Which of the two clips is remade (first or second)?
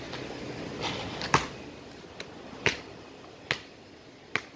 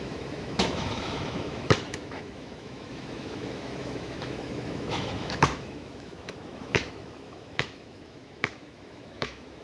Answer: second